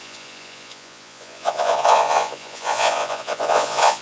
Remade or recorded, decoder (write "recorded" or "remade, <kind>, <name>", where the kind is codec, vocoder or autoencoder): remade, vocoder, Vocos